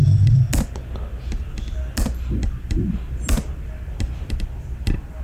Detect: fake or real real